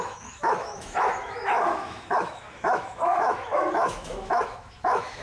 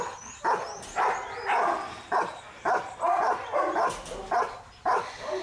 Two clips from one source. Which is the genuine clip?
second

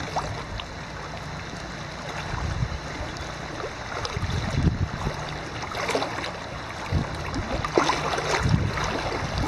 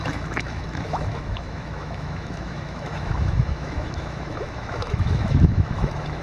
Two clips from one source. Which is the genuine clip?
first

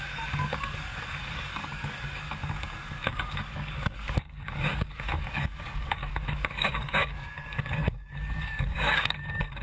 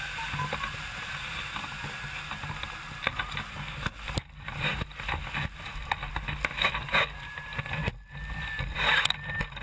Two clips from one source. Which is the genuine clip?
second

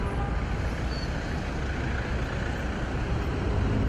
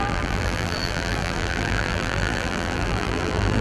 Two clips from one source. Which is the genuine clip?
first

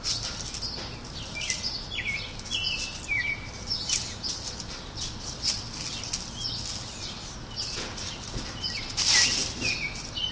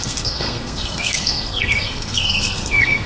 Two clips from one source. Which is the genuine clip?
first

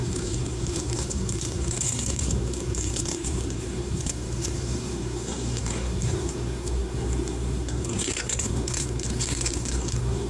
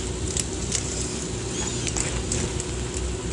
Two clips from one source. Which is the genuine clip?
second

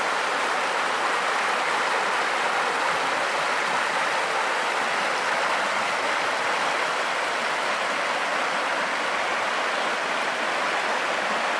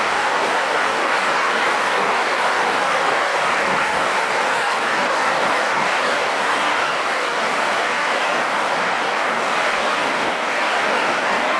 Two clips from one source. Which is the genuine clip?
first